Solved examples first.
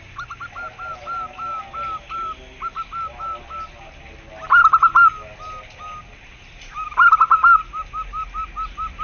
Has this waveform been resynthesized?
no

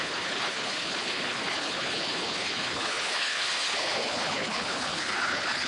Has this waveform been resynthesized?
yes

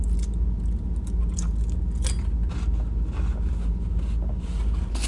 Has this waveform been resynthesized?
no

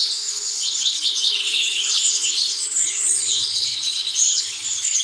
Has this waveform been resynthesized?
yes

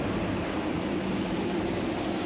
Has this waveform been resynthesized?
no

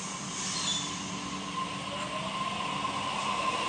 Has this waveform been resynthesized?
no